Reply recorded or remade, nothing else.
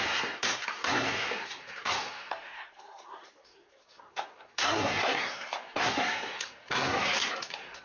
remade